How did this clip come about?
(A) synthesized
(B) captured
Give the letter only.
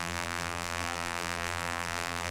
A